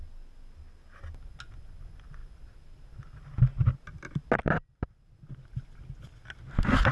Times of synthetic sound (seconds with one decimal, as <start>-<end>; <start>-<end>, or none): none